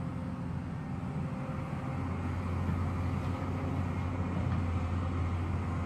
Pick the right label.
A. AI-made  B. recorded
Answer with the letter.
B